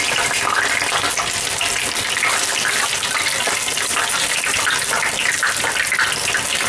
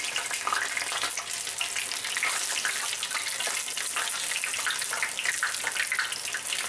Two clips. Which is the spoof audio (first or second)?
first